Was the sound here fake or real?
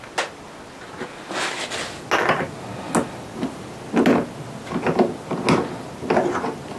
real